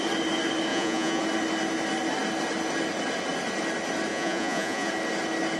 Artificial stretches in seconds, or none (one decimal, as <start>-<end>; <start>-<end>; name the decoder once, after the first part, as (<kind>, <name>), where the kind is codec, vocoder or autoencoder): 0.7-1.2 (vocoder, Vocos); 4.1-4.9